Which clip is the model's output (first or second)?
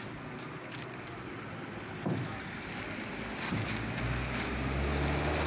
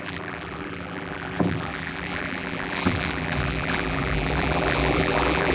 second